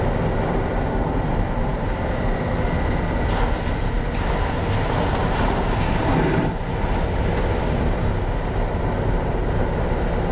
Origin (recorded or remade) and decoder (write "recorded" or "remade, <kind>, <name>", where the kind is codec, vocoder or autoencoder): recorded